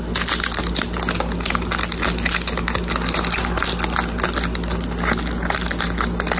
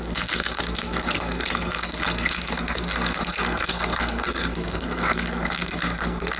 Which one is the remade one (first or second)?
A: second